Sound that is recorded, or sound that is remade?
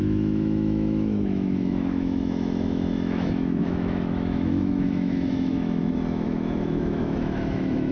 remade